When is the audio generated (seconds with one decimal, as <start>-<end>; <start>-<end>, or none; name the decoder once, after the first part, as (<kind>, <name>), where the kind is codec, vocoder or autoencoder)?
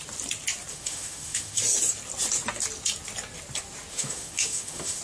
0.7-1.6 (autoencoder, DAC-VAE); 3.9-5.0